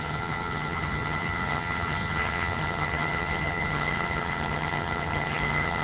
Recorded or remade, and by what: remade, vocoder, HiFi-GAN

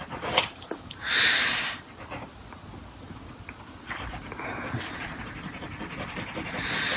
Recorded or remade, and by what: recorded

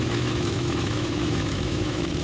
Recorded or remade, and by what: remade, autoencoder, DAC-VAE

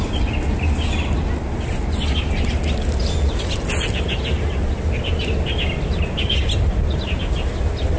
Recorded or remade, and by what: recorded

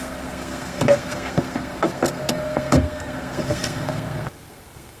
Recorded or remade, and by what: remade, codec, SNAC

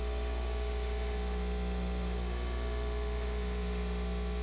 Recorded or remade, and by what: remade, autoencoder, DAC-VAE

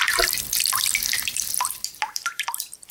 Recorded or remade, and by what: recorded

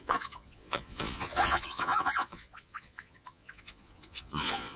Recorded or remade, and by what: remade, vocoder, Vocos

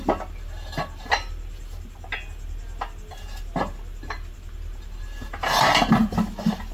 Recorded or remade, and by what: recorded